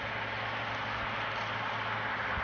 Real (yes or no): yes